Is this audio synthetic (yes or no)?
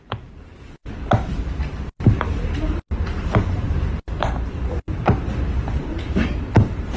yes